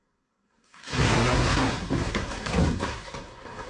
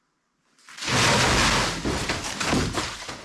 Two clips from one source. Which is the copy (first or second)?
first